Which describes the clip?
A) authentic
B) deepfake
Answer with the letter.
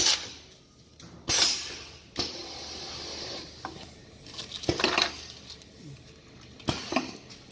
A